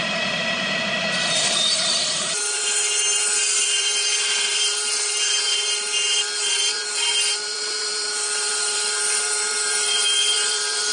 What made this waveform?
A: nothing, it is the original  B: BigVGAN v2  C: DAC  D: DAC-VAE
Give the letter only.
B